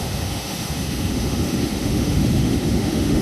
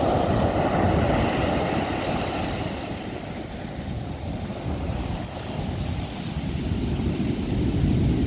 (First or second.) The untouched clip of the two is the second